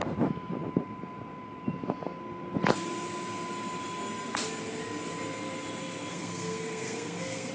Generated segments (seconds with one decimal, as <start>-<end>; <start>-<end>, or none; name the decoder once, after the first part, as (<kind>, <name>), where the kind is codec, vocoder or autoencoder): 6.1-7.5 (codec, SNAC)